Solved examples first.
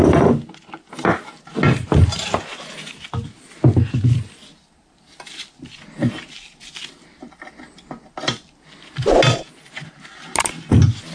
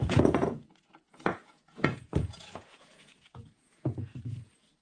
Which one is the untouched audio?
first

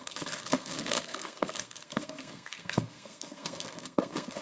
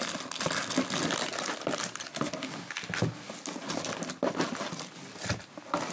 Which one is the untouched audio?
second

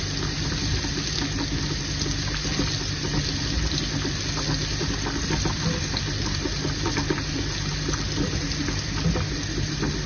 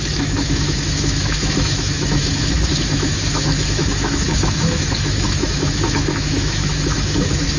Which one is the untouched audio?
first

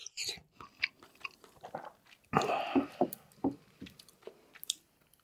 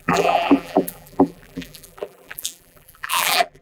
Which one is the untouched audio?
first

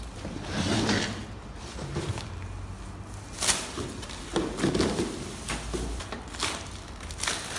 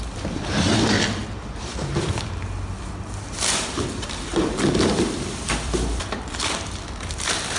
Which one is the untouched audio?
first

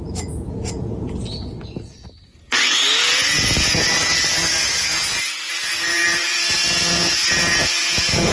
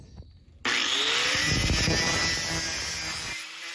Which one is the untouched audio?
second